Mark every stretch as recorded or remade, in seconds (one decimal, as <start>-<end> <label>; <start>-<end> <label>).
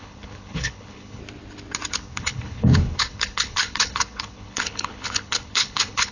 0.0-1.2 remade; 1.2-1.9 recorded; 1.9-6.1 remade